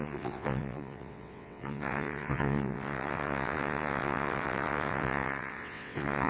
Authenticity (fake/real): fake